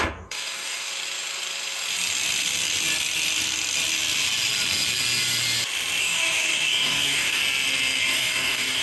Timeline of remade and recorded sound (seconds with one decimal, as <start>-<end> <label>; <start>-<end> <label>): 0.0-0.9 remade; 0.9-6.0 recorded; 6.0-7.4 remade; 7.4-8.0 recorded; 8.0-8.8 remade